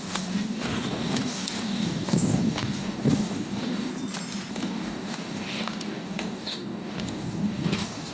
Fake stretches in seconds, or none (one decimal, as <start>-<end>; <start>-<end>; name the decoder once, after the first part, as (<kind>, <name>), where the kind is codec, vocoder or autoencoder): 0.0-3.9 (codec, DAC); 4.5-8.1